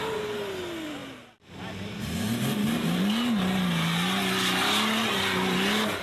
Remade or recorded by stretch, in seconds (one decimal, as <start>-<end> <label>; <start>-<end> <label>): 0.0-6.0 recorded